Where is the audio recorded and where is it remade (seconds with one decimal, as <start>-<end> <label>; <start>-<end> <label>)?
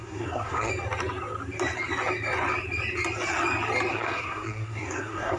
0.0-0.7 remade; 0.7-3.9 recorded; 3.9-5.4 remade